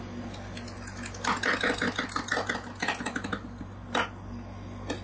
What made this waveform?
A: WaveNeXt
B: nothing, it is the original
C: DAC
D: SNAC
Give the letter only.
B